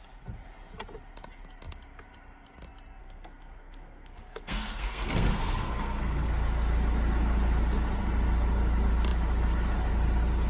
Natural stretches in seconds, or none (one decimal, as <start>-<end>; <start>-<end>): 0.0-3.0; 6.3-10.5